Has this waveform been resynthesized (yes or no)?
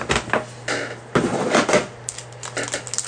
no